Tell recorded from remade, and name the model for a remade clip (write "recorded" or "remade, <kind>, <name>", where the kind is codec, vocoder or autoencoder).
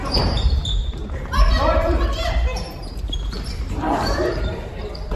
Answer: remade, vocoder, BigVGAN v2